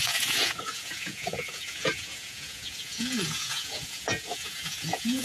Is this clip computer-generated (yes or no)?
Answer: yes